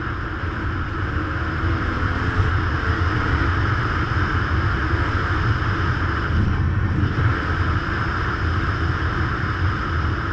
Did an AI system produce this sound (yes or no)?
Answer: no